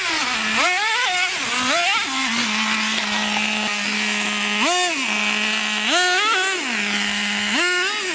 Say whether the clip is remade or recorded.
recorded